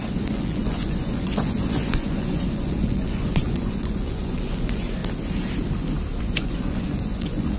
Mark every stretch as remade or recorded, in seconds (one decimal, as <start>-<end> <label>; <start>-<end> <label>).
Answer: 0.0-5.0 remade; 5.0-6.2 recorded; 6.2-7.6 remade